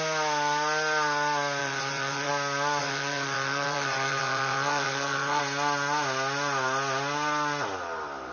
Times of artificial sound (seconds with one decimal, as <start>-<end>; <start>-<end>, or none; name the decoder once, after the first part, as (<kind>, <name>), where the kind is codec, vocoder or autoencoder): 1.6-2.3 (vocoder, WaveNeXt); 2.8-5.4